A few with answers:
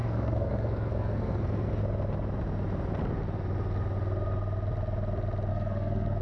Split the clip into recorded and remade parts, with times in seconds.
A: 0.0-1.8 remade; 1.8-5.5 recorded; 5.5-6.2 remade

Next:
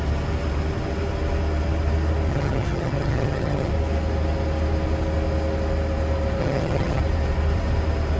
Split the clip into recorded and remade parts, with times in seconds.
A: 0.0-2.3 recorded; 2.3-3.7 remade; 3.7-6.4 recorded; 6.4-7.0 remade; 7.0-8.2 recorded